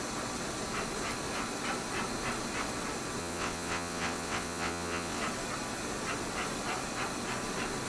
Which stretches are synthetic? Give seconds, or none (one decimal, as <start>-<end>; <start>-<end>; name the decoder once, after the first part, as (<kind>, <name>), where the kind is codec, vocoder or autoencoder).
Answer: 3.2-5.2 (vocoder, WaveNeXt)